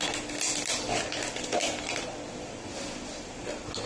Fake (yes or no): no